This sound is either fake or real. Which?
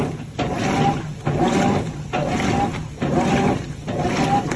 real